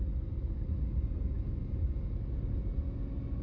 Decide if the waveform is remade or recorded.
recorded